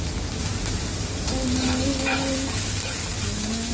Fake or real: real